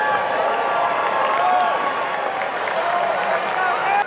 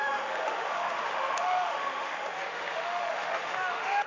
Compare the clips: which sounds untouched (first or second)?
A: first